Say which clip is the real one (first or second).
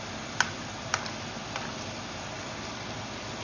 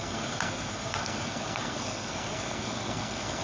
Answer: first